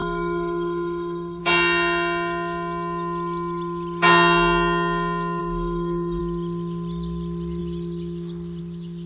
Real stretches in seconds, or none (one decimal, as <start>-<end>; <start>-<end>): 1.4-5.4; 6.2-9.1